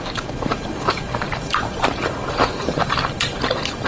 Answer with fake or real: fake